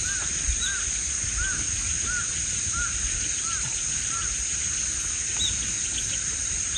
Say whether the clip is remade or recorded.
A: recorded